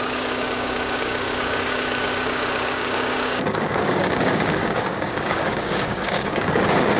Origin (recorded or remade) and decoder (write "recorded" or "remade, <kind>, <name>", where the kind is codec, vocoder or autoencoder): remade, codec, DAC